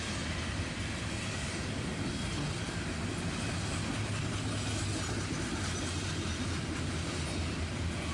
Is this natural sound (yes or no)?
yes